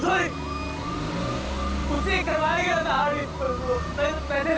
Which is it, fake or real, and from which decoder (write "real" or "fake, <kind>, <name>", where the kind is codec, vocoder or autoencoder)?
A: real